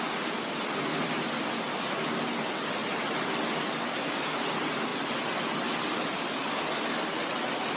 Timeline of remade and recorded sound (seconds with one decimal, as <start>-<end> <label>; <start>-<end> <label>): 0.0-7.8 recorded